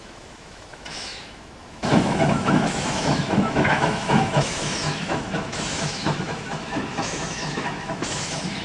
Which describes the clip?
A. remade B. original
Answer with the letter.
A